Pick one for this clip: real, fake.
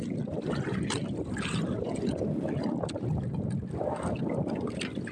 real